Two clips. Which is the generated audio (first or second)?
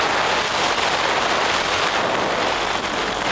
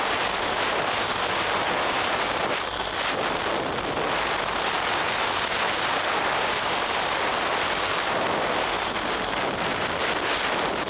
second